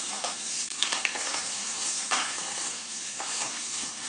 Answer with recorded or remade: remade